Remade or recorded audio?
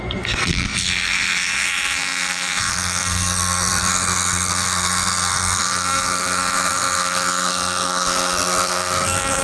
remade